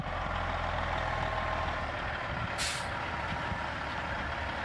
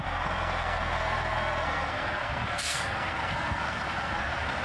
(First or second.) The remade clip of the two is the second